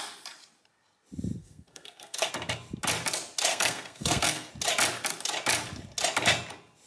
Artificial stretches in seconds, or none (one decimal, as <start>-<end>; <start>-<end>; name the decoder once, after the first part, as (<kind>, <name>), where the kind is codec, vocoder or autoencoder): 1.4-2.3 (codec, SNAC); 3.5-4.5

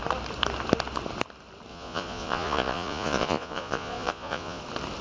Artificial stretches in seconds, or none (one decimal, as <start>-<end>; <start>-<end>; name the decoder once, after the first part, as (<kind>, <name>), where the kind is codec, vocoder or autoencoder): 1.7-4.6 (vocoder, Vocos)

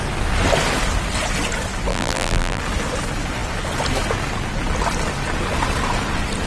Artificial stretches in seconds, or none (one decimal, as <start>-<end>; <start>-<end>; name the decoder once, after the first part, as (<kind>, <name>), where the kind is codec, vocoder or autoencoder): 1.9-2.6 (vocoder, BigVGAN v2)